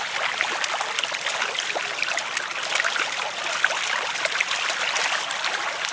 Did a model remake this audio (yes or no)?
no